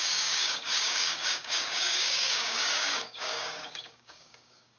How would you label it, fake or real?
fake